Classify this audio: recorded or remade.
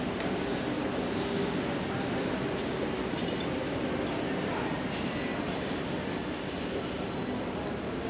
recorded